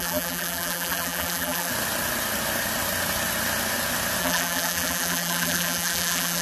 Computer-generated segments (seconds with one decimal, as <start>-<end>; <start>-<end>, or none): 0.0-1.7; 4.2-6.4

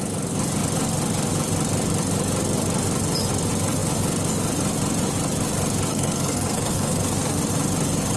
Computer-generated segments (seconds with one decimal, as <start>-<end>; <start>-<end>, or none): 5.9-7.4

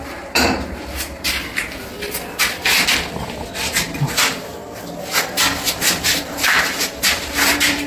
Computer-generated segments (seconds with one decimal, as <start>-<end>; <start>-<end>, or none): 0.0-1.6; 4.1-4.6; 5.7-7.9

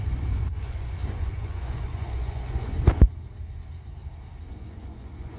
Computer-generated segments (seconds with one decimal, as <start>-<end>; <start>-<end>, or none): 0.0-2.7; 4.5-5.4